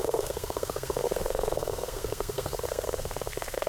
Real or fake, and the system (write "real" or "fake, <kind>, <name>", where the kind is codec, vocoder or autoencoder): fake, codec, SNAC